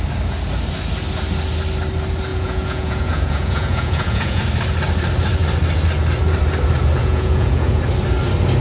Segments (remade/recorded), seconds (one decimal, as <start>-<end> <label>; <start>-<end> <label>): 0.0-2.3 recorded; 2.3-4.4 remade; 4.4-7.0 recorded; 7.0-7.8 remade; 7.8-8.6 recorded